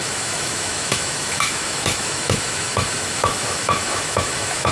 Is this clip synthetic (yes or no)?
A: yes